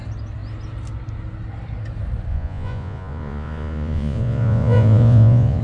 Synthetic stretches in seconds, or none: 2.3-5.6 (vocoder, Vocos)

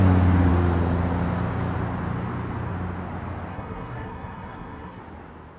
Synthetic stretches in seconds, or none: 3.5-5.0 (codec, SNAC)

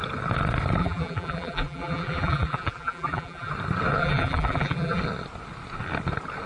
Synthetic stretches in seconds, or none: 0.8-3.5 (vocoder, BigVGAN v2); 4.0-5.0

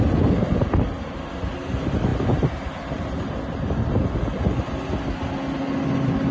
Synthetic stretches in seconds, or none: none

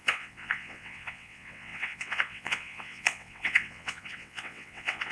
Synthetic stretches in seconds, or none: 0.0-5.1 (vocoder, WaveNeXt)

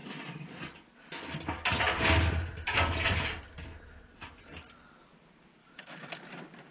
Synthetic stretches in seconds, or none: 5.6-6.2 (autoencoder, DAC-VAE)

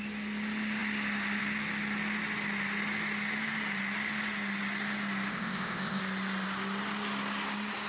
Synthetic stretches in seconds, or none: 5.3-6.0 (codec, ZipCodec)